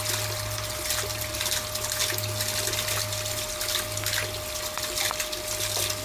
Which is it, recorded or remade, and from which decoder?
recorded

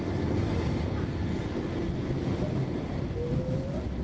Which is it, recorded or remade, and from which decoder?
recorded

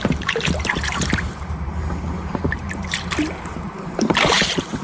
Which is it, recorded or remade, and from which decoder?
remade, vocoder, BigVGAN v2